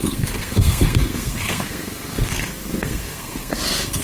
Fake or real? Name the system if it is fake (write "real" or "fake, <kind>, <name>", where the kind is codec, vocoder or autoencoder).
fake, codec, SNAC